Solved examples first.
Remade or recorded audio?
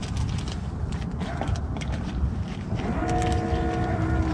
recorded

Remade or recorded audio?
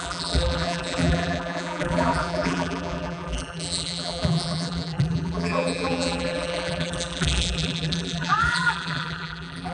remade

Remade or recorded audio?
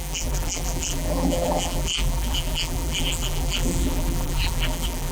remade